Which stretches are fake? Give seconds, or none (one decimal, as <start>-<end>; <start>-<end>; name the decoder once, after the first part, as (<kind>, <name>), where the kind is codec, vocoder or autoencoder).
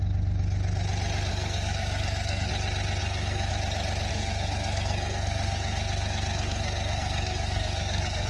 1.3-2.5 (codec, SNAC); 3.0-3.5; 4.1-8.3